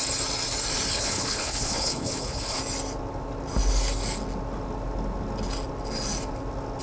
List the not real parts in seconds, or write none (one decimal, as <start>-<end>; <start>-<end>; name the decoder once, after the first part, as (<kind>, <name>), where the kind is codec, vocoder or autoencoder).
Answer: 0.9-2.6 (codec, HILCodec)